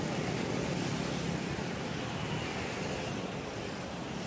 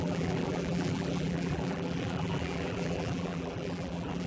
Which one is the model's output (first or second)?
second